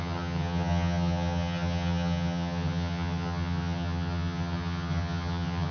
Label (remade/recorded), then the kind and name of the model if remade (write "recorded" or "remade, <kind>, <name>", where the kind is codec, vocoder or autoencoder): remade, vocoder, HiFi-GAN